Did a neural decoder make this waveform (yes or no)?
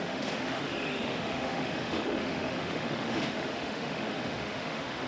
yes